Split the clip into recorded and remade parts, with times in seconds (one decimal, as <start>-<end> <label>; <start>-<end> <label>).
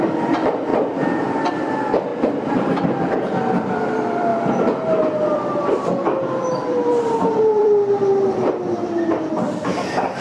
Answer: 0.0-10.2 remade